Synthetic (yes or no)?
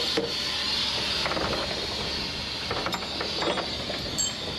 no